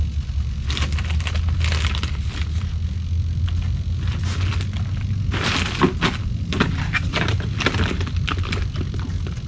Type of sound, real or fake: real